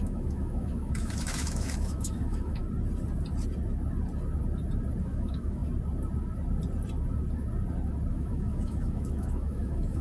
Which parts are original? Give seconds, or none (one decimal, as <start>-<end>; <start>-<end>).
2.6-5.0; 5.6-8.1